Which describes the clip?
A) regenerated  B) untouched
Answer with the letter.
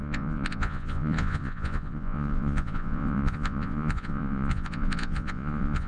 A